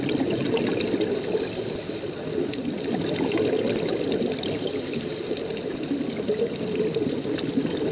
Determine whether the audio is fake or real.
real